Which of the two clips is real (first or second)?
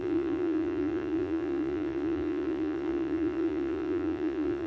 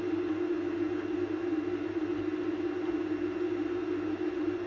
second